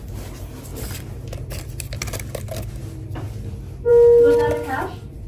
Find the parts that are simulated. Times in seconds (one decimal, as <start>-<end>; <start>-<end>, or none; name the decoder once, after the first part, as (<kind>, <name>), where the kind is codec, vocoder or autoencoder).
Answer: none